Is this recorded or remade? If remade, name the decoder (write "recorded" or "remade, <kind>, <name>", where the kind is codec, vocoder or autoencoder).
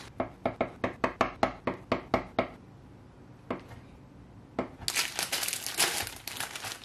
recorded